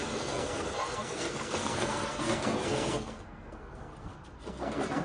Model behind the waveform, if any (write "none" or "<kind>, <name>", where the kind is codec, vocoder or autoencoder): codec, SNAC